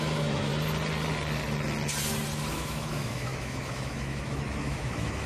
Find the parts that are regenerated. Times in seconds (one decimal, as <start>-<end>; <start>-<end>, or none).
0.0-0.5; 2.5-5.3